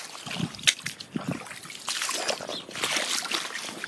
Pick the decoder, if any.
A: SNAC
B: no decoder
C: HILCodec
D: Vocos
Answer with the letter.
B